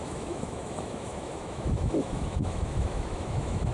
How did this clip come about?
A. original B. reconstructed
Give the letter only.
B